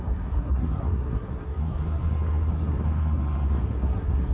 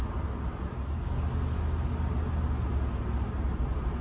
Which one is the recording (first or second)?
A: second